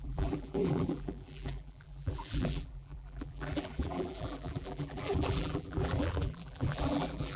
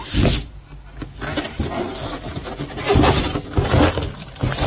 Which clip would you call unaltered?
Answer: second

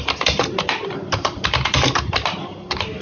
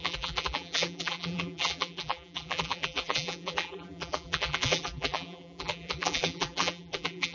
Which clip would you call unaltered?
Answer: first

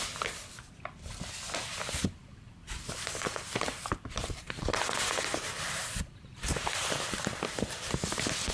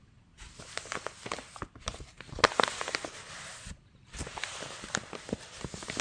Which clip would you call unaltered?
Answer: second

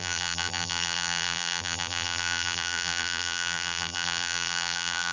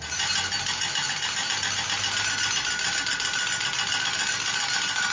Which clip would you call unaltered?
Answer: second